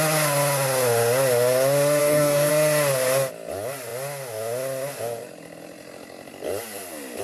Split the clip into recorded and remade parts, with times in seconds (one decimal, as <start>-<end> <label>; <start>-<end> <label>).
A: 0.0-2.0 recorded; 2.0-2.5 remade; 2.5-7.2 recorded